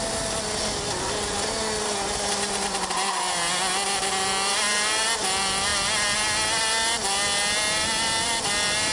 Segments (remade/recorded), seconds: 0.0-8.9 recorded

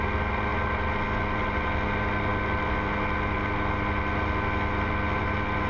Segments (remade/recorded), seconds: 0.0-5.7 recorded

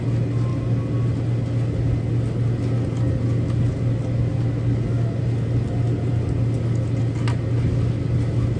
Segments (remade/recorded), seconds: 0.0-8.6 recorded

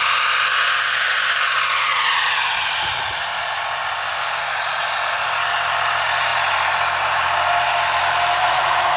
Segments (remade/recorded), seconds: 0.0-1.9 recorded; 1.9-2.4 remade; 2.4-8.4 recorded; 8.4-9.0 remade

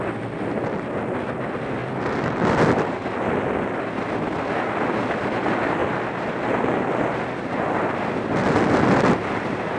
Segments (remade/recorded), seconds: 0.0-9.8 recorded